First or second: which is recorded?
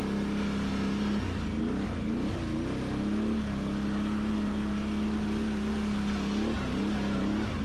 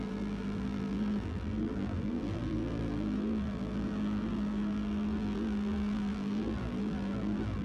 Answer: first